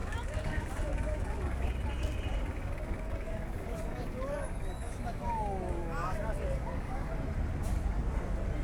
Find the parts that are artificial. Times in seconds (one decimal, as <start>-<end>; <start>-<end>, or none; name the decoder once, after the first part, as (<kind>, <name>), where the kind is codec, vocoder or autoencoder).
0.0-1.7 (codec, DAC); 2.4-7.1